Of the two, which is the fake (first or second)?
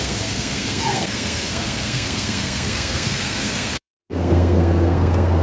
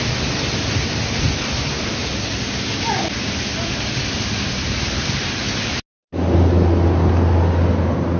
first